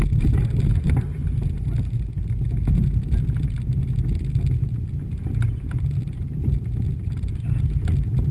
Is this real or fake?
real